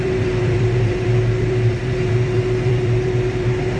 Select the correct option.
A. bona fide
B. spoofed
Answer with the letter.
B